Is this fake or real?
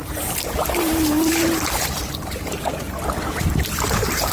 fake